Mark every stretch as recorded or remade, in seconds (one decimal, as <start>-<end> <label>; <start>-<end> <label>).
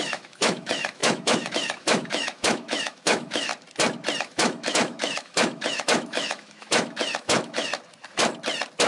0.0-3.5 remade; 3.5-4.2 recorded; 4.2-7.7 remade; 7.7-8.9 recorded